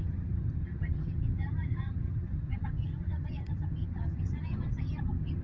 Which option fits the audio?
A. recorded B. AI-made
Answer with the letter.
B